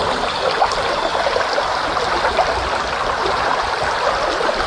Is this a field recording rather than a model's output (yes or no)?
yes